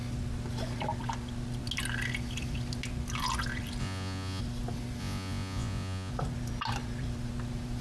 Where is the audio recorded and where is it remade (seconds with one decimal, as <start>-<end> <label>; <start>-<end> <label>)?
0.0-3.8 recorded; 3.8-4.4 remade; 4.4-5.0 recorded; 5.0-6.1 remade; 6.1-7.8 recorded